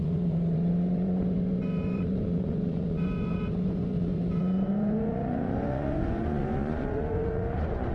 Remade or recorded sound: remade